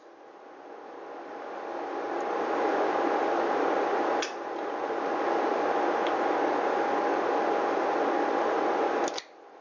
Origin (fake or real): real